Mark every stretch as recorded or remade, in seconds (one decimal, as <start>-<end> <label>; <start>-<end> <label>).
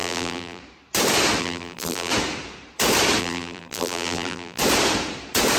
0.0-0.6 remade; 0.6-1.4 recorded; 1.4-2.1 remade; 2.1-3.2 recorded; 3.2-4.6 remade; 4.6-5.6 recorded